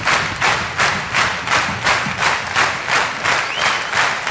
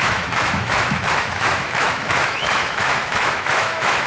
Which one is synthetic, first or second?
second